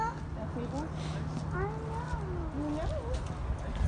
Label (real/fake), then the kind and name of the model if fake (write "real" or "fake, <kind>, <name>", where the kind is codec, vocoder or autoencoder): real